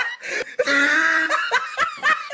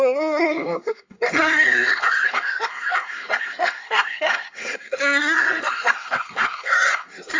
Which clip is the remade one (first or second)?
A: second